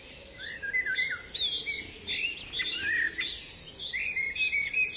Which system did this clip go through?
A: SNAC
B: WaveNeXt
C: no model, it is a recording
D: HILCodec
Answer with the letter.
C